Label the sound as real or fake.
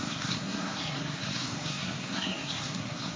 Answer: fake